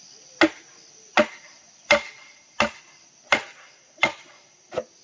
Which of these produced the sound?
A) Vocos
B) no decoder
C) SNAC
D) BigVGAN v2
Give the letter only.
B